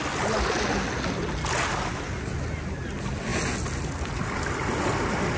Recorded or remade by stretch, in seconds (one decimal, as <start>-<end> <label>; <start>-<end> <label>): 0.0-5.4 recorded